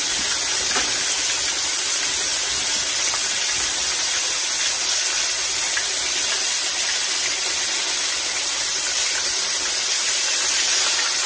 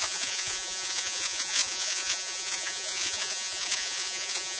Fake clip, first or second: second